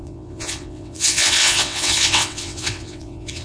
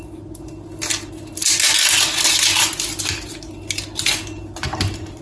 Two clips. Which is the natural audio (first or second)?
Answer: second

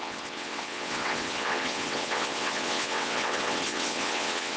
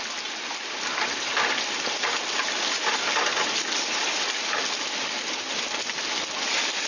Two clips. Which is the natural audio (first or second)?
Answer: second